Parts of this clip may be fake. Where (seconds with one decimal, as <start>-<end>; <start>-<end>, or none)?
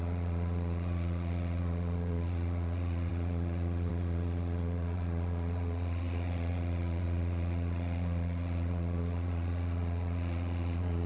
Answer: 0.0-11.1